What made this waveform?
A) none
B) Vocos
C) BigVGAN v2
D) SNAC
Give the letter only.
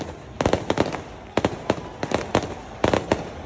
A